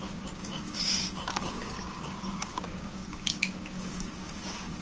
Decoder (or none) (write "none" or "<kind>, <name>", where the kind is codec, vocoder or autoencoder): codec, DAC